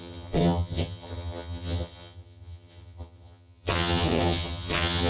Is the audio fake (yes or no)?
yes